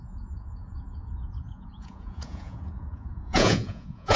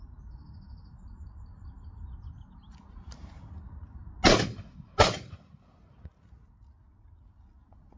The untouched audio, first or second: second